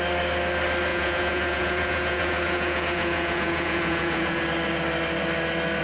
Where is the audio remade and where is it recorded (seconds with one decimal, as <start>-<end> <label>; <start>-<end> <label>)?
0.0-0.9 recorded; 0.9-4.4 remade; 4.4-5.8 recorded